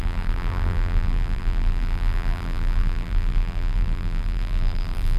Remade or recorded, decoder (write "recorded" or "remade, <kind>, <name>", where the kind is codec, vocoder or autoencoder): remade, vocoder, BigVGAN v2